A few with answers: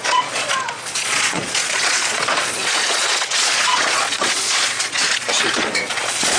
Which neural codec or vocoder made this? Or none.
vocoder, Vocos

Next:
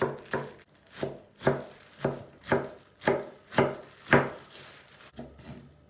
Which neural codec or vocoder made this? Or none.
none